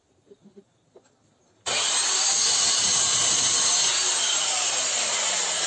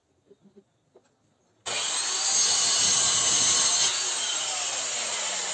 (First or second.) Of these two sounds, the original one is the second